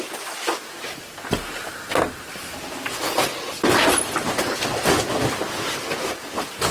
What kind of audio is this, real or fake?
real